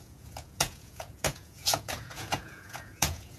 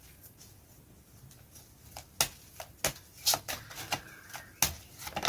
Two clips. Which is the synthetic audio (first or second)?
first